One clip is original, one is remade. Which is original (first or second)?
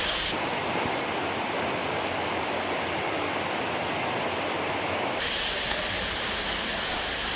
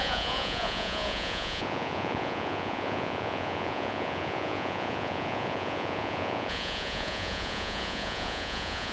first